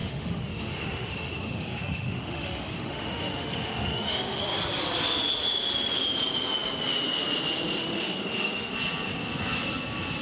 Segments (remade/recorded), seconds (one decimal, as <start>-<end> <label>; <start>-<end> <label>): 0.0-4.4 remade; 4.4-7.8 recorded; 7.8-8.7 remade; 8.7-10.2 recorded